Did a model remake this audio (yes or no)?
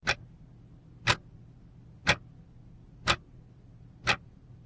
no